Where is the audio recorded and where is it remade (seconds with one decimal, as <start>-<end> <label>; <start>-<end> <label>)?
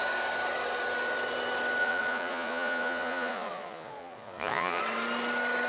0.0-1.8 recorded; 1.8-4.8 remade; 4.8-5.7 recorded